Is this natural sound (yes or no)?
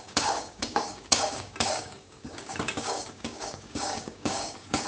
no